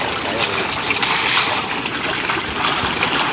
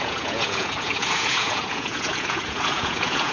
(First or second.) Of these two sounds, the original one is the first